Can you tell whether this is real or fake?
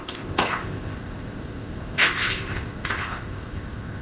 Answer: fake